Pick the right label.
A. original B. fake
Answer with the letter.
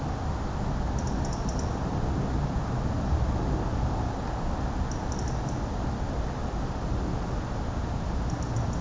A